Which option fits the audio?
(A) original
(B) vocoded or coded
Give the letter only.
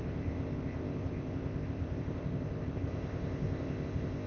B